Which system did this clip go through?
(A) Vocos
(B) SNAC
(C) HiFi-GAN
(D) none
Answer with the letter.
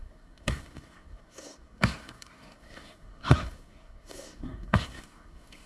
B